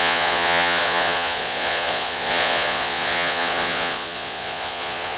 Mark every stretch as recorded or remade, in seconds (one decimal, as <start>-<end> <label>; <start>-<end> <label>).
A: 0.0-5.2 remade